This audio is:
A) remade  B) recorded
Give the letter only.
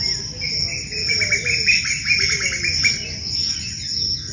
B